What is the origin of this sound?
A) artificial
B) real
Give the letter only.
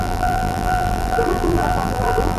A